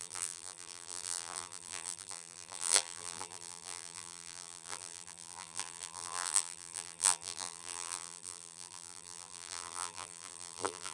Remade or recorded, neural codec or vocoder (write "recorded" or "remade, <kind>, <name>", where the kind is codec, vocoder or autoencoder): remade, vocoder, BigVGAN v2